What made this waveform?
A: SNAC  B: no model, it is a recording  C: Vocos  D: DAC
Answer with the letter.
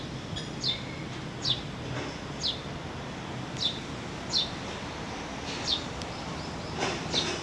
B